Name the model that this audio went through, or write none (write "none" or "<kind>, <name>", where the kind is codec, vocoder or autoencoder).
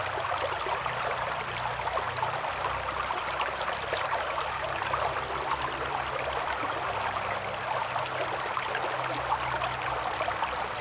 none